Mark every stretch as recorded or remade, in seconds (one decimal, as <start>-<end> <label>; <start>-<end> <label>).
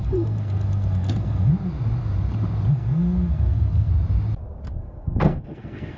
0.0-1.5 remade; 1.5-2.7 recorded; 2.7-3.9 remade; 3.9-4.7 recorded; 4.7-6.0 remade